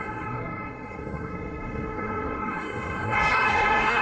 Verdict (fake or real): fake